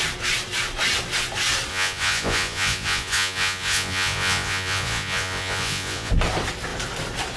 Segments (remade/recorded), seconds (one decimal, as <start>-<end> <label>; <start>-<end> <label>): 0.0-1.7 recorded; 1.7-6.1 remade; 6.1-7.4 recorded